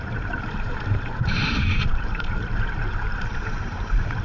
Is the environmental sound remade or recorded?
remade